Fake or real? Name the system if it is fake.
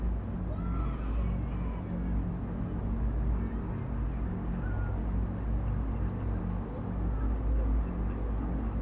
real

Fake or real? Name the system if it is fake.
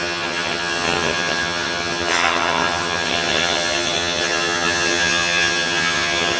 fake, vocoder, HiFi-GAN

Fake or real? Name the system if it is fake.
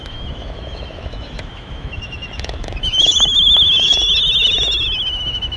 fake, autoencoder, DAC-VAE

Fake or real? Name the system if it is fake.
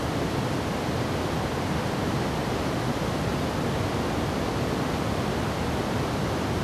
real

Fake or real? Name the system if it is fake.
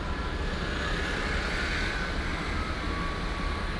real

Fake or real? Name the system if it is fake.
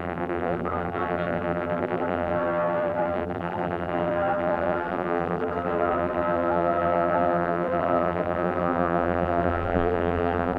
fake, vocoder, BigVGAN v2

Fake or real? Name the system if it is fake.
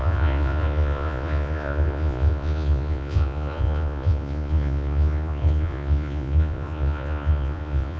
fake, vocoder, Vocos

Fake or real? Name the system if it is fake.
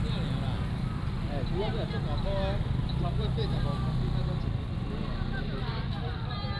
real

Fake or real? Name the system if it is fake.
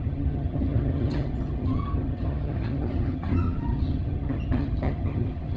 fake, vocoder, HiFi-GAN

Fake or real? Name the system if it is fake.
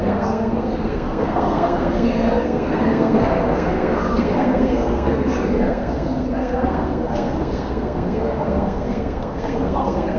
fake, codec, SNAC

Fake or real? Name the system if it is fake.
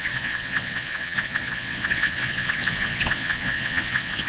fake, vocoder, Vocos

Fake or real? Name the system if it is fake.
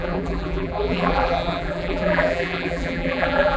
fake, vocoder, BigVGAN v2